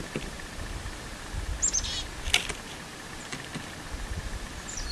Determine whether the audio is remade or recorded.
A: recorded